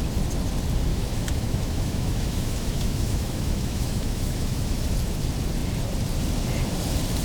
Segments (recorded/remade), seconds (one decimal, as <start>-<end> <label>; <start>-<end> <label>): 0.0-0.9 recorded; 0.9-4.8 remade; 4.8-7.2 recorded